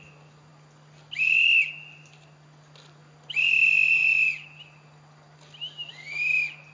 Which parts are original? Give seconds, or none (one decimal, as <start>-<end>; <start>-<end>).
0.0-6.7